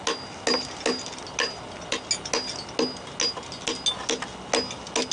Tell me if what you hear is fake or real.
real